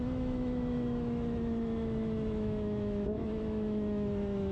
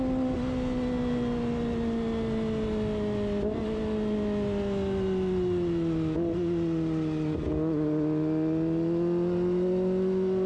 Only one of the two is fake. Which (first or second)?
first